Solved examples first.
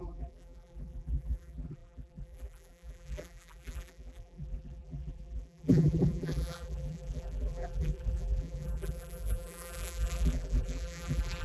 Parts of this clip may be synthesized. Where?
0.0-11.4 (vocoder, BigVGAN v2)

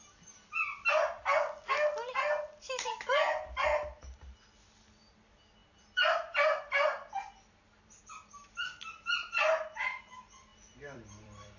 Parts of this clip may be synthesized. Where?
10.5-11.6 (vocoder, BigVGAN v2)

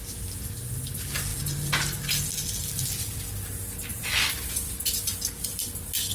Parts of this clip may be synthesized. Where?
1.3-2.2 (vocoder, BigVGAN v2); 3.9-4.5

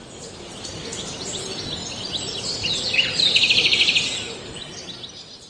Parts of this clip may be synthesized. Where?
1.8-5.1 (vocoder, BigVGAN v2)

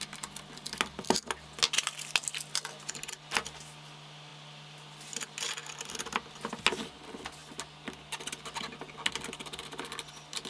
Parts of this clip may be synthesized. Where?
none